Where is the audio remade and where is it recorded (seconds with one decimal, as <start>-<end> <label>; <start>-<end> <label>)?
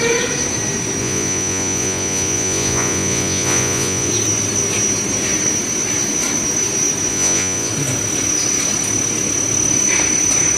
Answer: 0.0-1.0 recorded; 1.0-4.1 remade; 4.1-7.1 recorded; 7.1-7.7 remade; 7.7-10.6 recorded